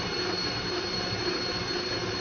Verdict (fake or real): fake